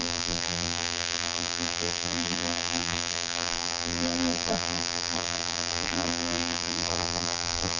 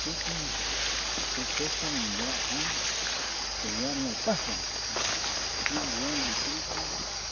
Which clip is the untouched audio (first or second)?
second